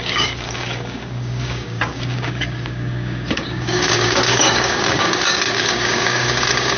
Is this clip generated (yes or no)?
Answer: yes